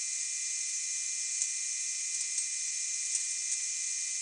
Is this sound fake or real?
real